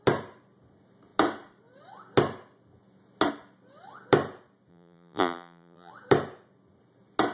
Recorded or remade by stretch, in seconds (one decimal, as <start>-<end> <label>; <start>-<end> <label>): 0.0-4.7 recorded; 4.7-5.9 remade; 5.9-7.3 recorded